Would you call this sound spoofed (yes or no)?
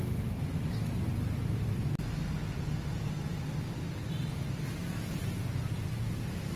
no